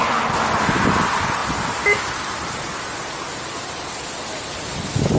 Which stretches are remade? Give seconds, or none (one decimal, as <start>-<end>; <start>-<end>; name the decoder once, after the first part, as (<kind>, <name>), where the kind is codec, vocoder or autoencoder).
none